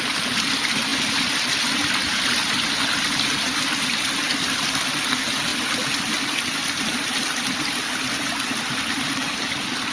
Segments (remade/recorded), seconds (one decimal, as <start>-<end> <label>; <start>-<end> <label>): 0.0-9.9 remade